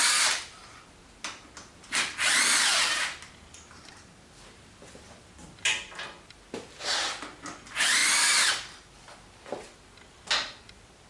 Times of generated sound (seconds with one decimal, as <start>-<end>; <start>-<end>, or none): none